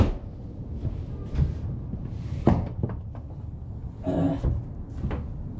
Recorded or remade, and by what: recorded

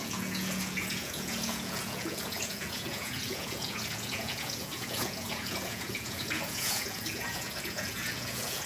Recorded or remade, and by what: remade, vocoder, Vocos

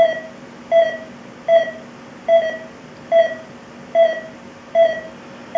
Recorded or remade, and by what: recorded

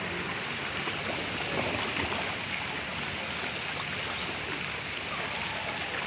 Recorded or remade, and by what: recorded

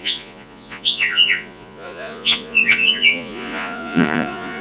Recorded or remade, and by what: remade, vocoder, Vocos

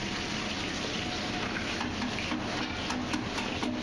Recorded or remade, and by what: recorded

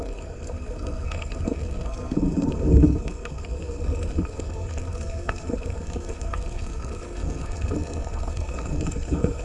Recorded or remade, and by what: remade, codec, SNAC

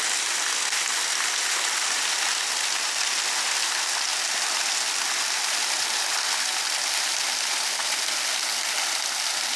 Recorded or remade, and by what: recorded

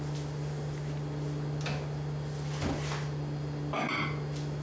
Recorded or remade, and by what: recorded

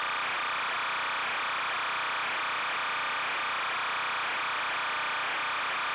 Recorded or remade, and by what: recorded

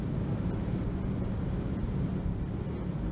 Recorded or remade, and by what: recorded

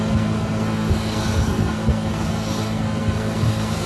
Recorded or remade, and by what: remade, codec, SNAC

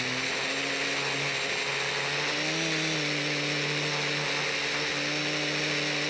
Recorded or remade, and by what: recorded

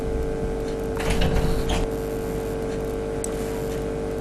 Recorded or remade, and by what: recorded